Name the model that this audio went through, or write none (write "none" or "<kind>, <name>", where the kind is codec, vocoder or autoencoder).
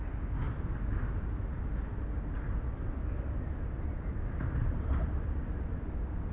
none